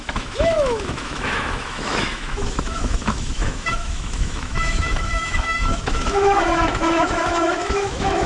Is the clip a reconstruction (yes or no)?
yes